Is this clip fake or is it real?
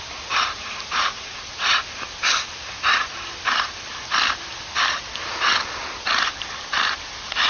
fake